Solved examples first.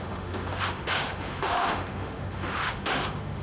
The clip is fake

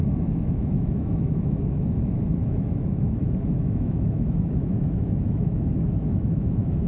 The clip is fake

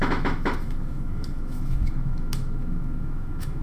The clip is fake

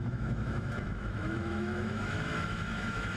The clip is fake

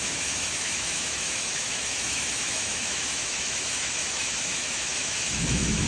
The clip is fake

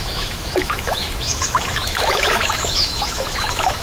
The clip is fake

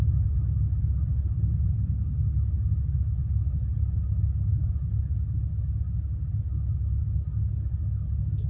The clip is real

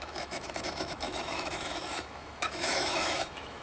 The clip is fake